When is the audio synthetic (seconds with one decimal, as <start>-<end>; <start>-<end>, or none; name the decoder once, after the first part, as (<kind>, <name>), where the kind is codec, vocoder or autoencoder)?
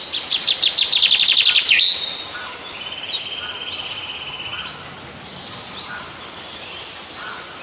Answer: none